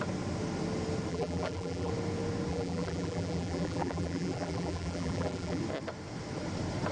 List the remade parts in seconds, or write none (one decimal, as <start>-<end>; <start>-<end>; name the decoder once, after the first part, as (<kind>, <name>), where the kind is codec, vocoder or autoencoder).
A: 1.1-1.9 (vocoder, BigVGAN v2); 2.5-5.6